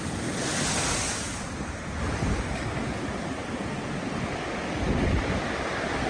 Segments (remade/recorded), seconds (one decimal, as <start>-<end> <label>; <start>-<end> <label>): 0.0-3.4 recorded; 3.4-4.3 remade; 4.3-6.1 recorded